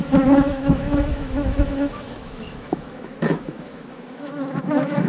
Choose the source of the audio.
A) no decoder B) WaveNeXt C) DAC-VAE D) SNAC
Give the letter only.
C